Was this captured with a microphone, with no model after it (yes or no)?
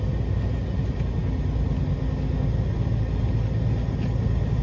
yes